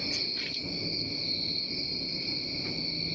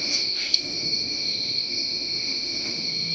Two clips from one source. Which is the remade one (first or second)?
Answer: second